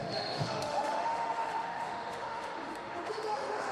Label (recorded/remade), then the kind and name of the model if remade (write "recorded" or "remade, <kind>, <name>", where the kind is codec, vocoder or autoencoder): remade, autoencoder, DAC-VAE